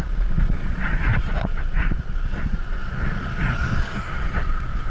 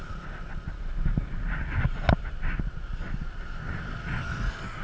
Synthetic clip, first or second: first